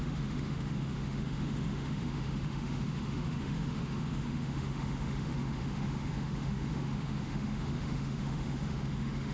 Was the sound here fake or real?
fake